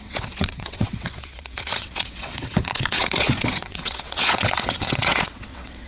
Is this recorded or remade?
remade